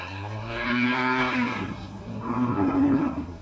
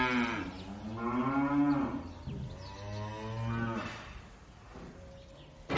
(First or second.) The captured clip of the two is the second